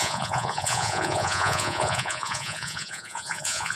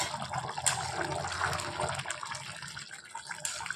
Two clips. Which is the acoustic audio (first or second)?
second